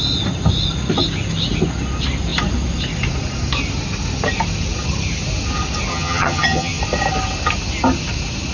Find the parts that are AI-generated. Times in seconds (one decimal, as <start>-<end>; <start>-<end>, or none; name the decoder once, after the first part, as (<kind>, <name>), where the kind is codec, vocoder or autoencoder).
5.9-6.8 (vocoder, HiFi-GAN)